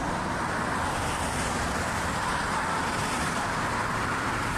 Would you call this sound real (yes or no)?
no